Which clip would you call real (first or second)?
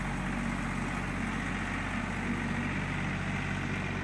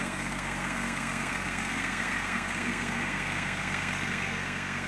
first